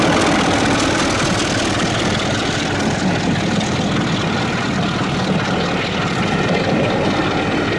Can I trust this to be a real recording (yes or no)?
no